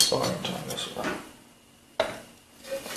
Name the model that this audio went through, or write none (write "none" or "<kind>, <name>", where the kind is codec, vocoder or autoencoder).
none